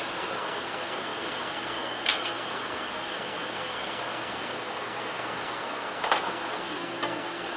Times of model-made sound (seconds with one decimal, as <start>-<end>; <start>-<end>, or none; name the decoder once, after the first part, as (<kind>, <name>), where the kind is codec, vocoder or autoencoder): 0.0-7.6 (codec, SNAC)